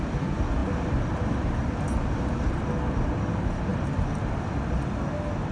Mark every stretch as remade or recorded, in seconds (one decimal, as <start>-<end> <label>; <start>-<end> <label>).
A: 0.0-5.5 recorded